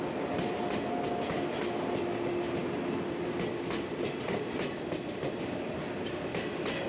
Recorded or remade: recorded